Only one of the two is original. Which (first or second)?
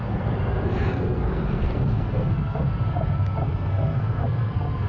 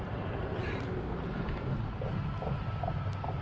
second